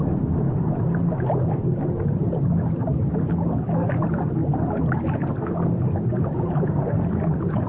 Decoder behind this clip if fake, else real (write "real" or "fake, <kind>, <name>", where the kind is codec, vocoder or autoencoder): real